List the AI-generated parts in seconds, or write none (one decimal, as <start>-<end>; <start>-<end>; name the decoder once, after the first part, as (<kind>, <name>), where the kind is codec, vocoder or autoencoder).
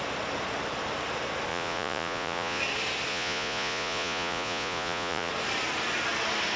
1.5-2.6 (vocoder, Vocos); 3.1-5.3